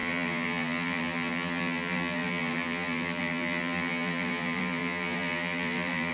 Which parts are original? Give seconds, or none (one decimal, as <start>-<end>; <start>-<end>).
none